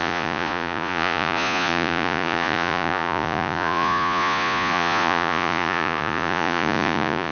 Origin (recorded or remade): remade